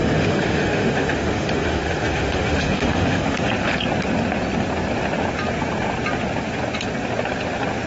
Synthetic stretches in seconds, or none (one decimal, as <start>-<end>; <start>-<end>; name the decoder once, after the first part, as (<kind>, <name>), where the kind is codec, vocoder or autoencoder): 0.0-3.5 (autoencoder, DAC-VAE)